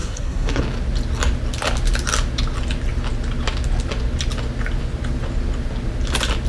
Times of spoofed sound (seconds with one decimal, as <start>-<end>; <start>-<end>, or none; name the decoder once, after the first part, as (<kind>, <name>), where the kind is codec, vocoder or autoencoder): 0.0-0.6 (codec, SNAC)